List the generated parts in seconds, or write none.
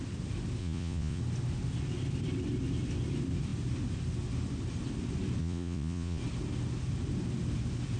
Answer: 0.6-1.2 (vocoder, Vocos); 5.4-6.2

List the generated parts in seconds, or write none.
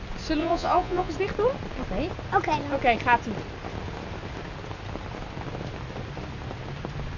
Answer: 0.4-1.1 (vocoder, Vocos)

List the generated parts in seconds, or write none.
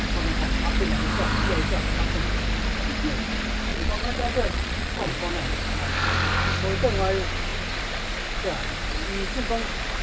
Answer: 3.7-5.1 (vocoder, Vocos)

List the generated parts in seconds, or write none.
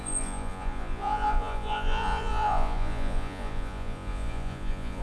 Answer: 0.0-5.0 (vocoder, Vocos)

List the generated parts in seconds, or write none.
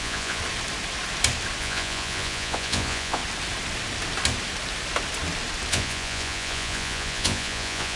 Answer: 0.0-0.4 (vocoder, Vocos); 1.6-3.2; 5.7-8.0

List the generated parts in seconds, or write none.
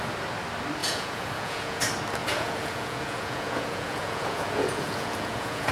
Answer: 0.8-1.8 (vocoder, Vocos); 2.2-5.7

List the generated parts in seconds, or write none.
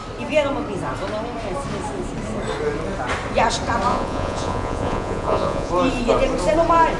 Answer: 3.9-5.7 (vocoder, Vocos)